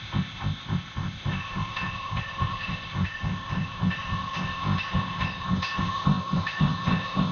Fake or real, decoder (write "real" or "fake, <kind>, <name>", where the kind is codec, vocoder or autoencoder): fake, codec, ZipCodec